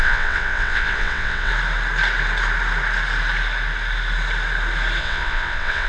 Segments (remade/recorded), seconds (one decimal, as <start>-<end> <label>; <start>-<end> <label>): 0.0-1.5 remade; 1.5-5.0 recorded; 5.0-5.9 remade